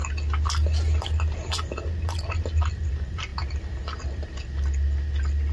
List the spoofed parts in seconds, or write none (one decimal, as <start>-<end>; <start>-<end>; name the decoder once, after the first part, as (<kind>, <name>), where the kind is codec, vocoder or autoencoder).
none